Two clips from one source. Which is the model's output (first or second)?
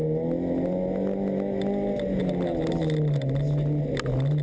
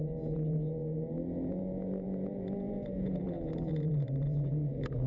second